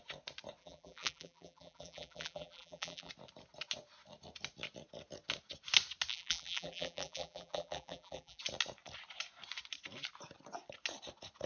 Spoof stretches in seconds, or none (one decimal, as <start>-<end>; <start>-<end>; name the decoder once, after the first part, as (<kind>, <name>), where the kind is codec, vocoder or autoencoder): 0.6-3.1 (vocoder, BigVGAN v2); 6.1-8.4

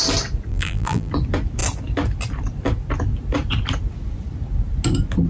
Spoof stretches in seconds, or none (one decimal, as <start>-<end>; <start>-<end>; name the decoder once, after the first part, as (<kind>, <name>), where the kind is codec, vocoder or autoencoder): 0.5-1.1 (vocoder, BigVGAN v2)

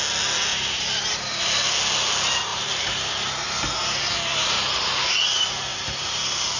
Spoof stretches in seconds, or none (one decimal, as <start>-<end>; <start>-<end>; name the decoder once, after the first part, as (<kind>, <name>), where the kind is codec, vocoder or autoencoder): 0.5-1.3 (vocoder, BigVGAN v2); 2.5-3.0; 4.3-5.1; 5.7-6.6

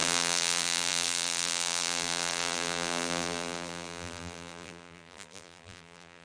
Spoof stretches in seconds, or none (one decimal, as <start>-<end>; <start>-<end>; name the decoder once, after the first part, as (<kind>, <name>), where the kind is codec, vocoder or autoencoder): 0.0-6.2 (vocoder, BigVGAN v2)

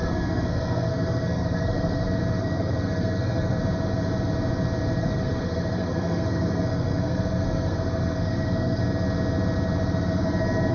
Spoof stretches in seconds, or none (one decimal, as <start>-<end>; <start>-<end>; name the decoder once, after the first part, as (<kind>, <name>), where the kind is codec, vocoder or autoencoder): 0.0-3.6 (codec, SNAC); 5.0-8.8

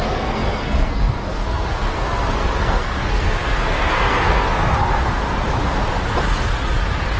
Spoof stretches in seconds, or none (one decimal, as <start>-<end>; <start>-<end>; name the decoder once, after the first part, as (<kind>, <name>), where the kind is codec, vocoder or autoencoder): 0.0-5.0 (codec, SNAC)